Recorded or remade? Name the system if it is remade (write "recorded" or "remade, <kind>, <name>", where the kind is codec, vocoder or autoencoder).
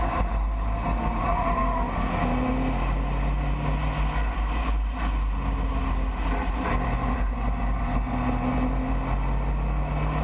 recorded